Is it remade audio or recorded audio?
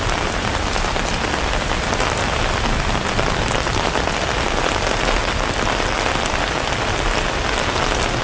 recorded